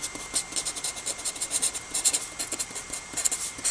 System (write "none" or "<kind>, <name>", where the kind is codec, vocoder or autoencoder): none